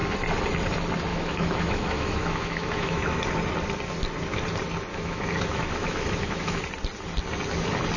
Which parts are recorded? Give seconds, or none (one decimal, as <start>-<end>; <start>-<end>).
0.0-1.1; 3.3-4.9; 6.6-8.0